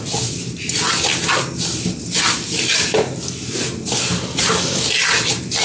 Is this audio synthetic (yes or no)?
no